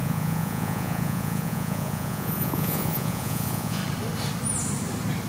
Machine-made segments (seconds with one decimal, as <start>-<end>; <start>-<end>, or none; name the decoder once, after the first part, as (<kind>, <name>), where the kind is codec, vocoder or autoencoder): 0.0-3.8 (vocoder, Vocos)